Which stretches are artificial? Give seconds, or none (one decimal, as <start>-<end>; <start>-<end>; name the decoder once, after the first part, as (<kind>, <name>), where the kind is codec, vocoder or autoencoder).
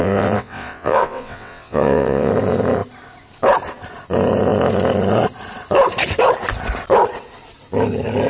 0.0-2.3 (vocoder, WaveNeXt)